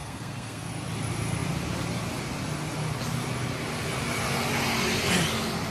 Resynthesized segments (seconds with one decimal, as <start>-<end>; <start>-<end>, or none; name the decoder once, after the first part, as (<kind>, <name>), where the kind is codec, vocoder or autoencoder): 0.0-0.7 (codec, SNAC)